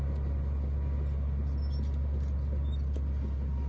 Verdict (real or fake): real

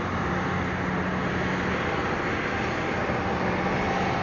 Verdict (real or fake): real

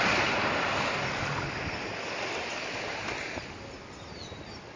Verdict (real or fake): real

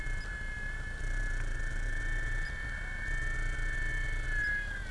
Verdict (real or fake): real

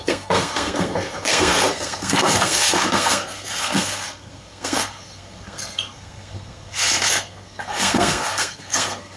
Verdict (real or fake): fake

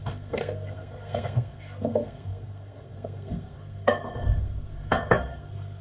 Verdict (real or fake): fake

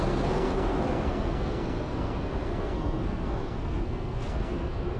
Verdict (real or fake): fake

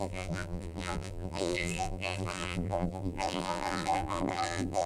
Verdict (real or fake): fake